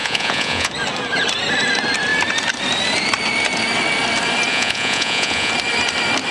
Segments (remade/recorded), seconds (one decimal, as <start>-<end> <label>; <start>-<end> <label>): 0.0-0.7 remade; 0.7-4.5 recorded; 4.5-5.5 remade; 5.5-6.3 recorded